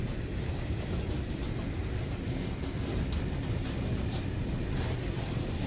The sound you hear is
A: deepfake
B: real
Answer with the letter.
B